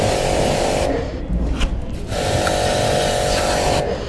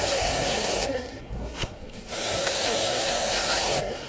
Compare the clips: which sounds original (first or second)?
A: first